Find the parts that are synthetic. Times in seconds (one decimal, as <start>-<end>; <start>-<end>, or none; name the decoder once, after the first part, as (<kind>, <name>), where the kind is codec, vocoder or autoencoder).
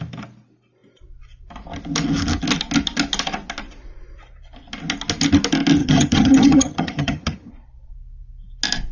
5.8-7.5 (vocoder, HiFi-GAN)